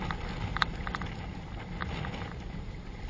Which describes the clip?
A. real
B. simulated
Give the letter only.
A